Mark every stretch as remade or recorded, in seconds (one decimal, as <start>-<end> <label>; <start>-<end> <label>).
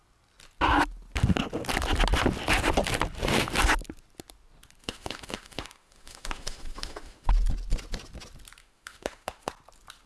0.0-4.8 recorded; 4.8-7.3 remade; 7.3-8.6 recorded; 8.6-9.5 remade; 9.5-10.1 recorded